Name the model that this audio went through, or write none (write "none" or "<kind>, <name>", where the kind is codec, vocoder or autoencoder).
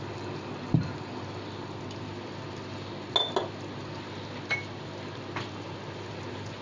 none